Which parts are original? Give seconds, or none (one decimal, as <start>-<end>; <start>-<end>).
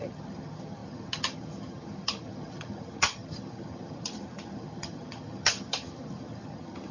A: none